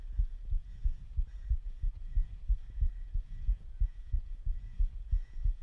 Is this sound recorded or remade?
remade